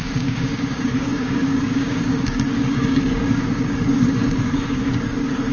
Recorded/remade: remade